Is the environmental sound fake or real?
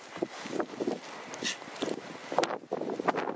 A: real